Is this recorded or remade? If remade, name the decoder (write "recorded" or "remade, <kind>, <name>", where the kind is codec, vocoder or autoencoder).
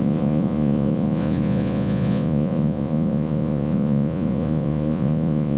remade, vocoder, Vocos